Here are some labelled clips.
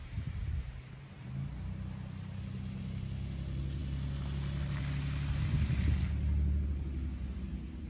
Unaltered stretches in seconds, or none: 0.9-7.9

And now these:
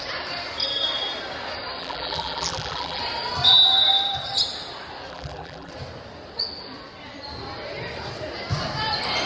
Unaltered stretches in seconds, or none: 0.0-1.8; 3.0-5.1; 5.7-9.3